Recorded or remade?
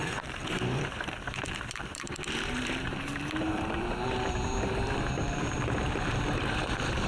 remade